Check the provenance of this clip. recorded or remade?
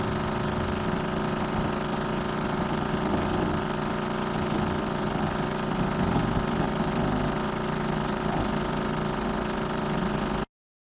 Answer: recorded